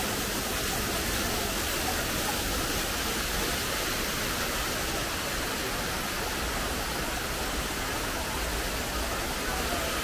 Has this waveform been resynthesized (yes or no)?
no